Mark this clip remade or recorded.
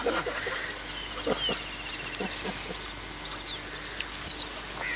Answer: recorded